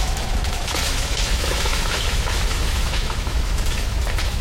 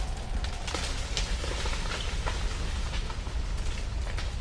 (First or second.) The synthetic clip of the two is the first